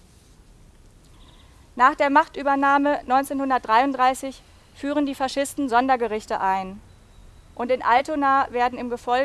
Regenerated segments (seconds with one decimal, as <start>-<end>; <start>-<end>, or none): none